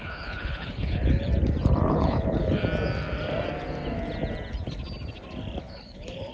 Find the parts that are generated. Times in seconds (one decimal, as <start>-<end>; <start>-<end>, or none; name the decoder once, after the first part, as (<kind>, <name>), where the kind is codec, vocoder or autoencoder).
0.0-1.3 (codec, HILCodec); 1.9-2.6; 5.6-6.3